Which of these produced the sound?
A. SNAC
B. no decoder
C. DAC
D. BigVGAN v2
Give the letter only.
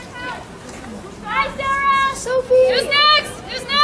B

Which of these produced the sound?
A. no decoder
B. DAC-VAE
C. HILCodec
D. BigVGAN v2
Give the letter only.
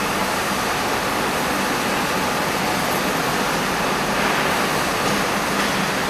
A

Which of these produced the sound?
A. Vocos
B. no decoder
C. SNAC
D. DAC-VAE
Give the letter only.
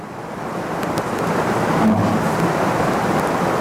B